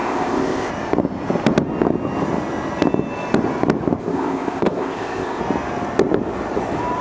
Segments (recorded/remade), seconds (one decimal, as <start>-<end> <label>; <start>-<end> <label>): 0.0-0.7 remade; 0.7-4.0 recorded; 4.0-5.4 remade; 5.4-7.0 recorded